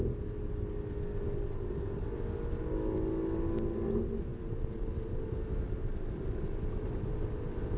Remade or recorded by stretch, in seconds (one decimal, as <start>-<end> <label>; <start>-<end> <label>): 0.0-4.3 recorded; 4.3-5.1 remade; 5.1-7.8 recorded